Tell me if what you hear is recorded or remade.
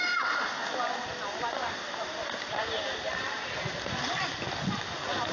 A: recorded